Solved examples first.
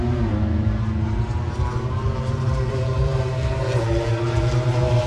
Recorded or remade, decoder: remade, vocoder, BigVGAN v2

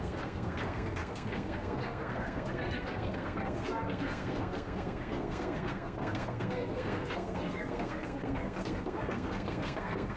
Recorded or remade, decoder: remade, codec, SNAC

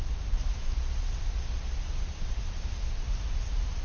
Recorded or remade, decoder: recorded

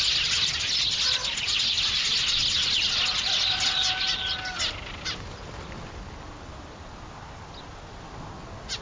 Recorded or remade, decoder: recorded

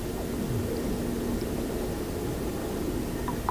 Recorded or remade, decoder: recorded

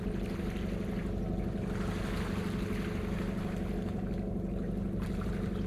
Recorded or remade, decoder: recorded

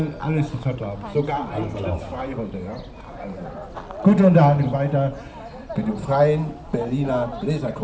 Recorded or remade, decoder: recorded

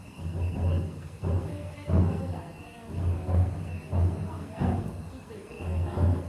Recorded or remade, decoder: remade, codec, SNAC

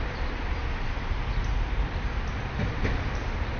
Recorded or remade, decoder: recorded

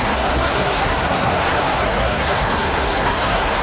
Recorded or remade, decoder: remade, codec, SNAC